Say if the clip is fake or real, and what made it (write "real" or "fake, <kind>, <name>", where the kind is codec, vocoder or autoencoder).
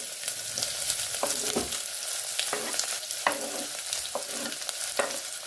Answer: real